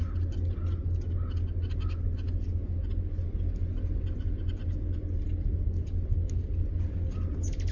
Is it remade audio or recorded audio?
recorded